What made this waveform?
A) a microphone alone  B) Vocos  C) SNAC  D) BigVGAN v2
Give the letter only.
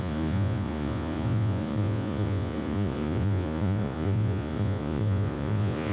B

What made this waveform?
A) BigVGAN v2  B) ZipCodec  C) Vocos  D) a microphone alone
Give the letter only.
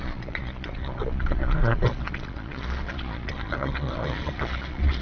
C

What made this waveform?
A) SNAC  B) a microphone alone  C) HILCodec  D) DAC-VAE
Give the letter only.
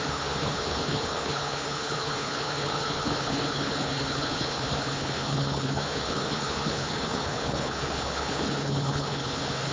C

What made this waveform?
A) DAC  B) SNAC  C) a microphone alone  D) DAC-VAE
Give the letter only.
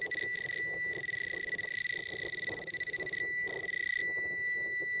C